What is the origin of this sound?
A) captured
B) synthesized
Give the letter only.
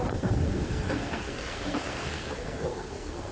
B